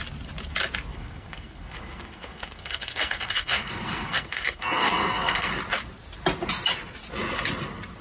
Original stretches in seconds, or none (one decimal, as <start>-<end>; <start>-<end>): 0.0-0.9; 5.5-8.0